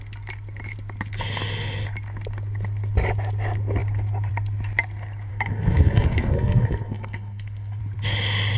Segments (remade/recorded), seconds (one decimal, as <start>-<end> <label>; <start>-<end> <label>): 0.0-5.3 recorded; 5.3-7.8 remade; 7.8-8.6 recorded